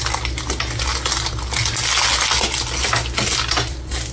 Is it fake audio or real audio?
real